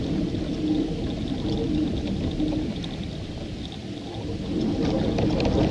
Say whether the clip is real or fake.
real